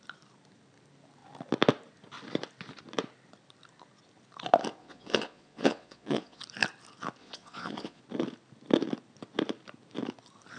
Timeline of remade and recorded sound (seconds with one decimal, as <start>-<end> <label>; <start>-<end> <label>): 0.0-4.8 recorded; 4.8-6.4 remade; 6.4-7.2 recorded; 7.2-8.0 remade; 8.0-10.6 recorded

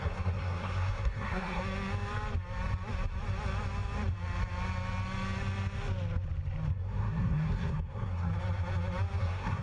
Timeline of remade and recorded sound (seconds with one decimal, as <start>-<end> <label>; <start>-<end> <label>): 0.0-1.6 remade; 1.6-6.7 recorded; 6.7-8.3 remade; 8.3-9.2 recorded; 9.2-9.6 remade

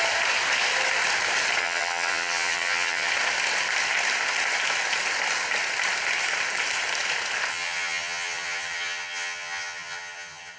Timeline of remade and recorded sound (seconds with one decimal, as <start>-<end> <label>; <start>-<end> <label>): 0.0-1.6 recorded; 1.6-3.1 remade; 3.1-7.5 recorded; 7.5-10.6 remade

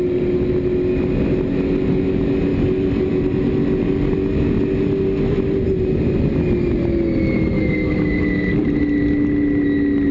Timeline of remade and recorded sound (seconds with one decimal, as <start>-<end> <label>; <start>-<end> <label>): 0.0-10.1 recorded

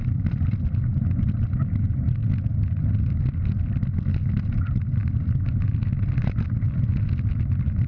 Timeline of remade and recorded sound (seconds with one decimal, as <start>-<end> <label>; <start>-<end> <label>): 0.0-7.9 recorded

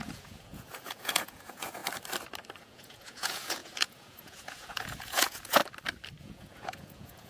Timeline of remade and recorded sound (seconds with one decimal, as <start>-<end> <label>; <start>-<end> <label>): 0.0-1.8 remade; 1.8-2.6 recorded; 2.6-5.6 remade; 5.6-6.2 recorded; 6.2-7.3 remade

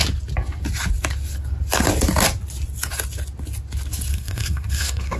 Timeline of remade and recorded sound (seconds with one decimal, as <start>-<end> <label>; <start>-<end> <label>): 0.0-4.1 recorded; 4.1-5.2 remade

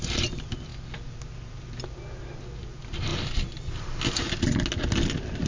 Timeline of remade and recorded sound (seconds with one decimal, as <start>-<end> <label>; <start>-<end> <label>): 0.0-5.5 recorded